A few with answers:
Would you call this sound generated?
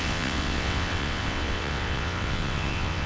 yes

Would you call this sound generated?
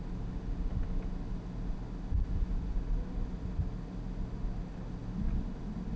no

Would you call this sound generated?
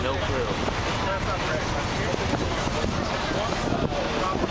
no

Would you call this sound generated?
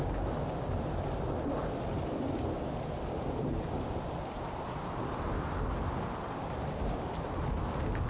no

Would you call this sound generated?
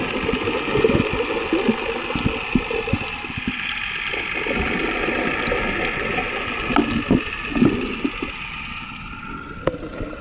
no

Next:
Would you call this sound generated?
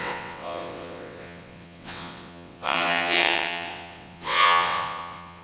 yes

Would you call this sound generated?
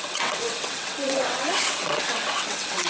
yes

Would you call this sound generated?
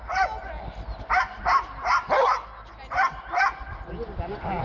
no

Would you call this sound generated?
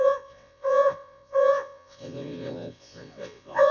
yes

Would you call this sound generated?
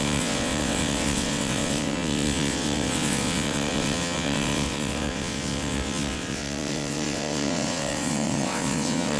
yes